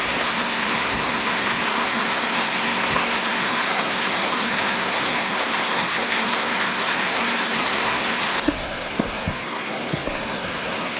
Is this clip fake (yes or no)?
yes